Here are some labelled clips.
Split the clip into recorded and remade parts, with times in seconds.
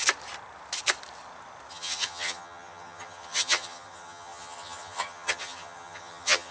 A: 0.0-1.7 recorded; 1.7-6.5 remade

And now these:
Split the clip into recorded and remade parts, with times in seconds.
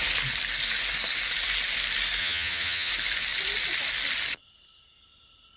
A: 0.0-2.2 recorded; 2.2-2.9 remade; 2.9-5.6 recorded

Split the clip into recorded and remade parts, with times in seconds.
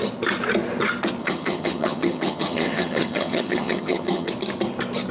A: 0.0-1.2 recorded; 1.2-4.3 remade; 4.3-5.1 recorded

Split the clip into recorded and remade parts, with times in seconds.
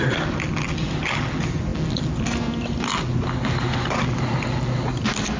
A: 0.0-5.4 recorded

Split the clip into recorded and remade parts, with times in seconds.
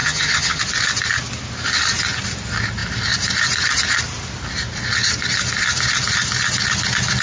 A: 0.0-0.6 remade; 0.6-7.2 recorded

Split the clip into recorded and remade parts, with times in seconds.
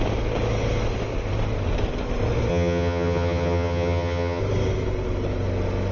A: 0.0-2.5 recorded; 2.5-4.4 remade; 4.4-5.9 recorded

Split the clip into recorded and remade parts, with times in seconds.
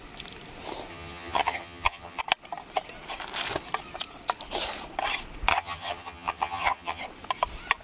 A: 0.0-0.9 recorded; 0.9-2.2 remade; 2.2-5.5 recorded; 5.5-7.0 remade; 7.0-7.8 recorded